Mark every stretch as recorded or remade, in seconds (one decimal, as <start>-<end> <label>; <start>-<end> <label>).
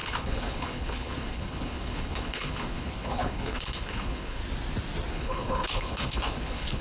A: 0.0-4.4 remade; 4.4-5.1 recorded; 5.1-6.8 remade